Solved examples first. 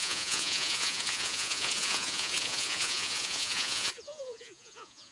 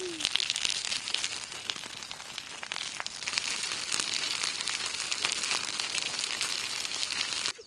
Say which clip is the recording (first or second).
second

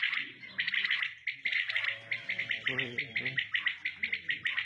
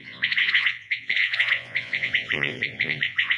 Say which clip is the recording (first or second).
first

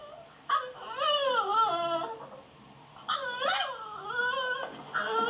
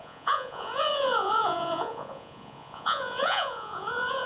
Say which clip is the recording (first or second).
first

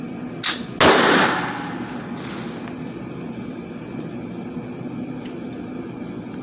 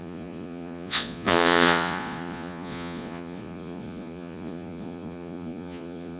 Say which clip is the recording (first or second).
first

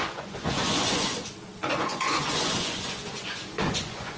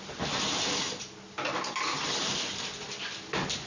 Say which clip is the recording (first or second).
second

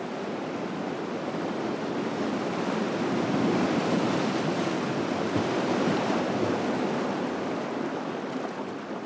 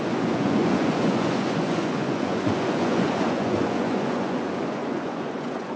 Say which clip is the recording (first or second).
first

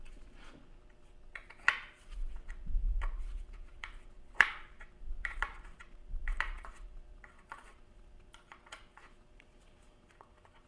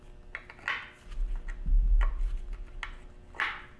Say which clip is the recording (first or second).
second